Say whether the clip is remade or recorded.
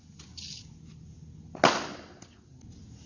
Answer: recorded